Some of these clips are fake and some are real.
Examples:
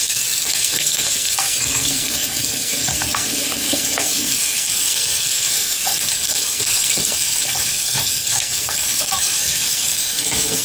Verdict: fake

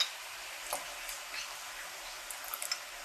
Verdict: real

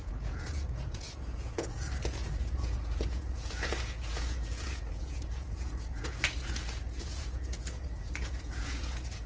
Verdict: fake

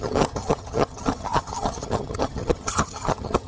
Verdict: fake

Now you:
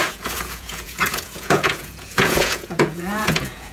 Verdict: fake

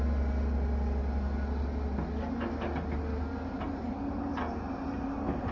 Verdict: real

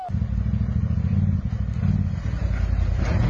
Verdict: real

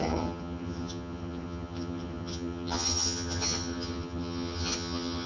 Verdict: fake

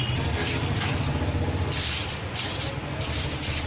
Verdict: real